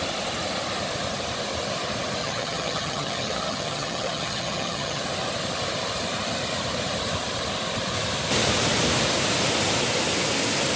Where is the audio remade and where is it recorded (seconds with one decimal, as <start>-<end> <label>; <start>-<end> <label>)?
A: 0.0-2.2 recorded; 2.2-5.0 remade; 5.0-10.8 recorded